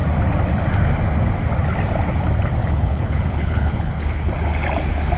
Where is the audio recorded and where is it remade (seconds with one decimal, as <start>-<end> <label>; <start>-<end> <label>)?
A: 0.0-2.6 recorded; 2.6-4.3 remade; 4.3-5.2 recorded